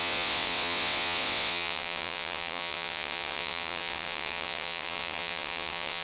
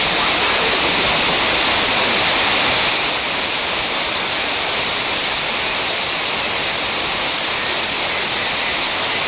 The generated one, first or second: first